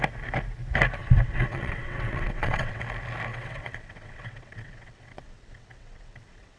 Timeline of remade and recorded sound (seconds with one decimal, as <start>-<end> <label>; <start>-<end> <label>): 0.0-1.0 recorded; 1.0-2.8 remade; 2.8-3.3 recorded; 3.3-6.6 remade